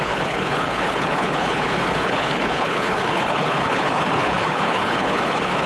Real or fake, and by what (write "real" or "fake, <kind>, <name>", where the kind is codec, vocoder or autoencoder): fake, codec, HILCodec